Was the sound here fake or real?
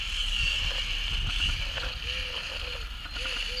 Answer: real